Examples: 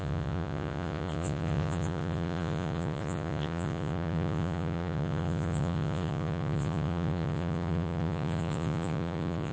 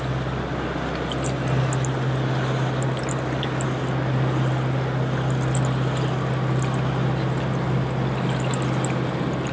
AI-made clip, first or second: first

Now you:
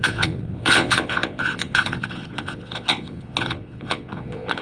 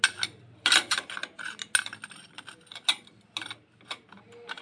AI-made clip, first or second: first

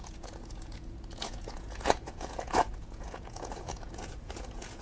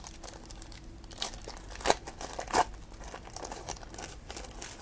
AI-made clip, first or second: first